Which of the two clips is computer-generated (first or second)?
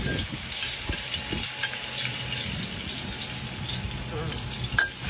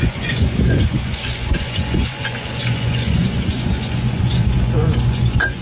second